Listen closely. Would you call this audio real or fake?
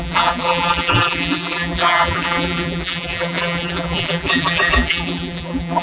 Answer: fake